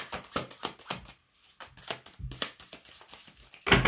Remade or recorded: recorded